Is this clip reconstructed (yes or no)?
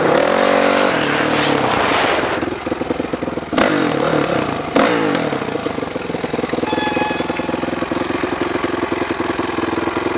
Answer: no